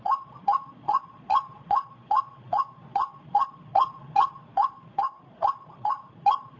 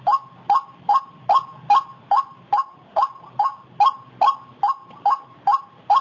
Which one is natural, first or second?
second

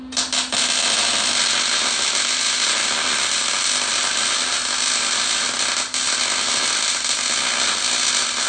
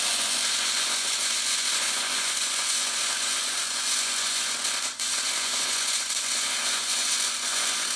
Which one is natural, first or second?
first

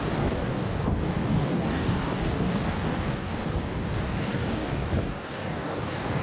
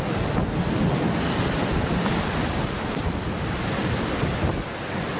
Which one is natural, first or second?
second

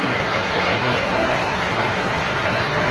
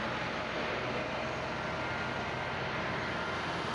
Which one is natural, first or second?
second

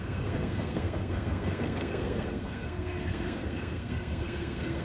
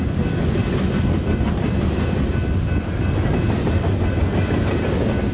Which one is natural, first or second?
second